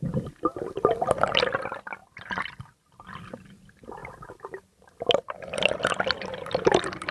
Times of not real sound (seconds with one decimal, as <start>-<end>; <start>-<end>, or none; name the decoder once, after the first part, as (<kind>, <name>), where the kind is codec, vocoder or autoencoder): 2.0-3.0 (vocoder, BigVGAN v2); 4.0-7.1